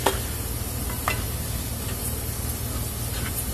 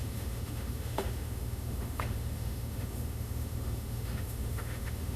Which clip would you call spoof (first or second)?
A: second